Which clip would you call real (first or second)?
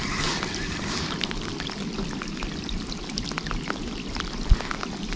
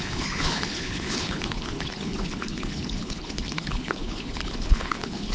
first